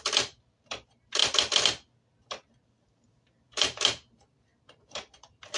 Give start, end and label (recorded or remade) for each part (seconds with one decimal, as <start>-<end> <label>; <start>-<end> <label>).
0.0-1.2 remade; 1.2-2.6 recorded; 2.6-5.6 remade